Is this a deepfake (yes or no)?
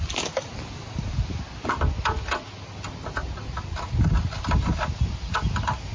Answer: no